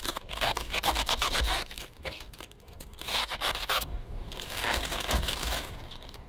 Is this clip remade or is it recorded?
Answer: remade